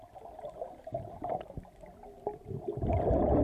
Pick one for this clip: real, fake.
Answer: real